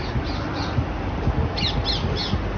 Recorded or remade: recorded